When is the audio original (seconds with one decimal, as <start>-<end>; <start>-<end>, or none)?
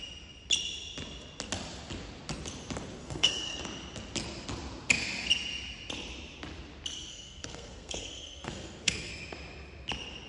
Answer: 0.0-3.0; 3.6-7.1; 9.1-10.3